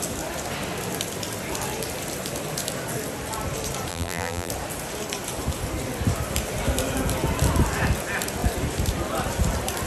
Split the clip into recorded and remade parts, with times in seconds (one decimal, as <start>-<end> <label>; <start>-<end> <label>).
0.0-3.9 recorded; 3.9-4.5 remade; 4.5-9.9 recorded

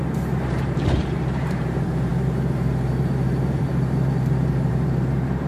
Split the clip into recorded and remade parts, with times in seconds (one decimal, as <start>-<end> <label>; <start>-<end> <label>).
0.0-5.5 remade

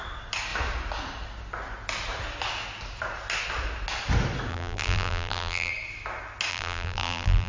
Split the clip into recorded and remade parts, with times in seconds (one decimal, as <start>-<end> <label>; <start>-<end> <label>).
0.0-4.5 recorded; 4.5-5.7 remade; 5.7-6.5 recorded; 6.5-7.5 remade

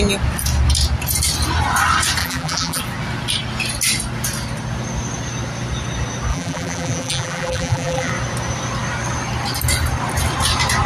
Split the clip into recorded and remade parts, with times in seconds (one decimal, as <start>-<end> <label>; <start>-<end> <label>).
0.0-2.2 recorded; 2.2-2.8 remade; 2.8-6.3 recorded; 6.3-8.1 remade; 8.1-10.9 recorded

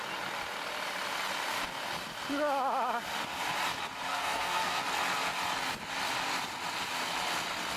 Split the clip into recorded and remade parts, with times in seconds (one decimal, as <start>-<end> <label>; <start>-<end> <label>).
0.0-4.1 recorded; 4.1-4.8 remade; 4.8-7.8 recorded

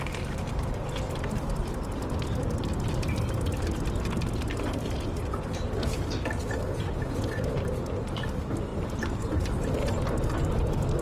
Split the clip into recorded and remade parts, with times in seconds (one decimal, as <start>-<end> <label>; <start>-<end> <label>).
0.0-11.0 recorded

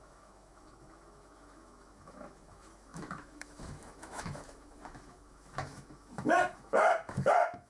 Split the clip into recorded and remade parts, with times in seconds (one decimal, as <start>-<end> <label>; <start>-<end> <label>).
0.0-7.7 remade

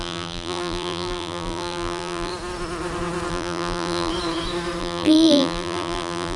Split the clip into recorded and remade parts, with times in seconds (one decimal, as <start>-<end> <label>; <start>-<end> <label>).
0.0-2.3 remade; 2.3-3.3 recorded; 3.3-4.1 remade; 4.1-4.8 recorded; 4.8-6.4 remade